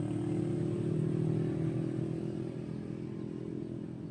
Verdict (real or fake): real